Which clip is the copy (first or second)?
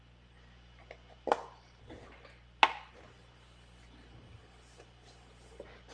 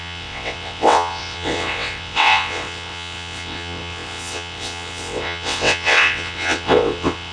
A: second